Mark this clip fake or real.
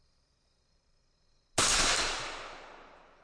real